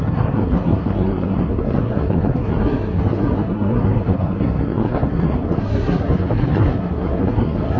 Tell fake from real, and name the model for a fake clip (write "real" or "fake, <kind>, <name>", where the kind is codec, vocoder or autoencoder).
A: fake, codec, SNAC